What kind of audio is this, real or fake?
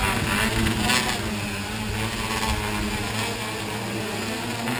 real